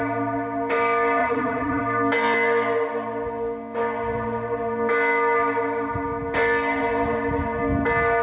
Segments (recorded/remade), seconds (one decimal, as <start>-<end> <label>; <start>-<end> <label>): 0.0-1.2 recorded; 1.2-1.8 remade; 1.8-8.2 recorded